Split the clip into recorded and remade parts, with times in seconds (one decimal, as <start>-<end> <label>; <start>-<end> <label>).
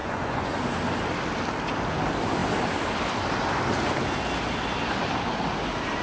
0.0-0.5 remade; 0.5-6.0 recorded